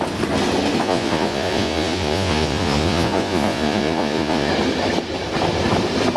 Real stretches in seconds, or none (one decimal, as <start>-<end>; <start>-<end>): 0.0-0.8; 4.5-6.2